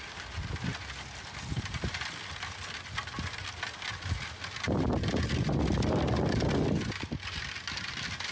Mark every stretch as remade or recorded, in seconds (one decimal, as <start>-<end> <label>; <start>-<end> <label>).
0.0-8.3 recorded